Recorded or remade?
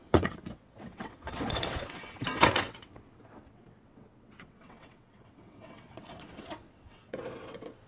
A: remade